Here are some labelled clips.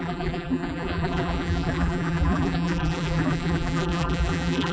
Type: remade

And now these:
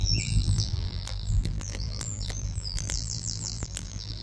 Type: remade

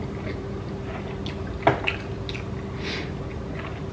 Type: recorded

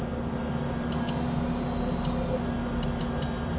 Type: recorded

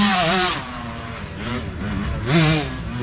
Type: remade